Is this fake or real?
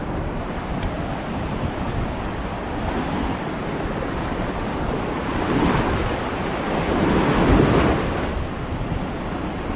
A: real